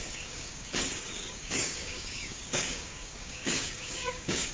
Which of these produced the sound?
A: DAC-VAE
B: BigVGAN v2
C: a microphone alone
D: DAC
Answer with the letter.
D